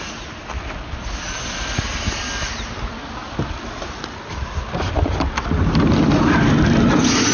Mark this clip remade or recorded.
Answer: recorded